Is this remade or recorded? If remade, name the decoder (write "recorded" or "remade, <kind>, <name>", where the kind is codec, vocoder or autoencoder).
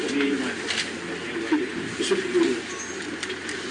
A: recorded